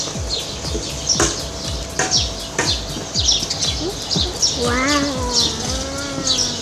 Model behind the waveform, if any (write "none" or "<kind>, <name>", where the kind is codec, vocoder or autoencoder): none